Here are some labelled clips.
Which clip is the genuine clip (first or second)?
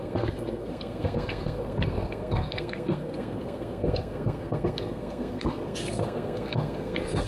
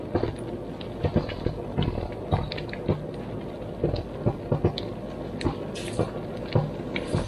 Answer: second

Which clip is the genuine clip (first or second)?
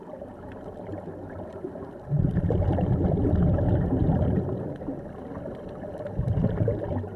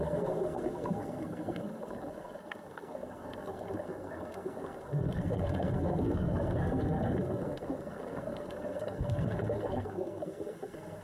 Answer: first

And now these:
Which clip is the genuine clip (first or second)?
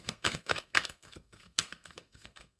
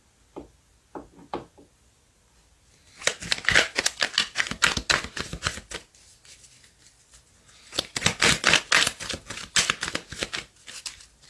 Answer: second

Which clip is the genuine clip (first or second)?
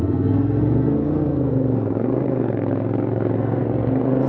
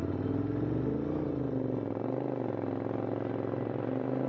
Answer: second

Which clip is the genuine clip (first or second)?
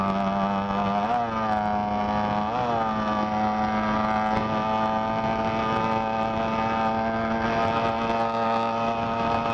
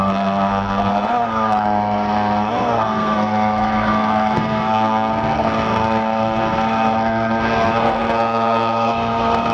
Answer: first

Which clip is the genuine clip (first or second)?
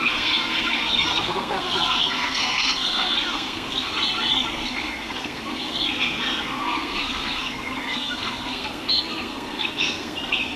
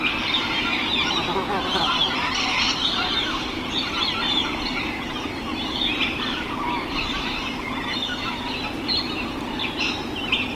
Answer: second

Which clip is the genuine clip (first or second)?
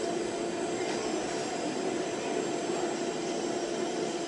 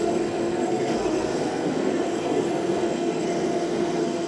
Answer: first